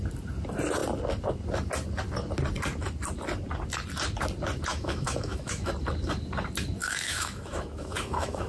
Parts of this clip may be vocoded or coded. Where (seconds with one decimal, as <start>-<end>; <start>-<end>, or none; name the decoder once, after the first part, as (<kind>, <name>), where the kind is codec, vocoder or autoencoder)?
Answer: 4.7-5.7 (autoencoder, DAC-VAE); 6.8-8.5